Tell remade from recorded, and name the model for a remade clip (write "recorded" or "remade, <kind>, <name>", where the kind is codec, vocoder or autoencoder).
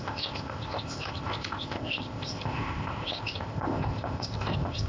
remade, codec, ZipCodec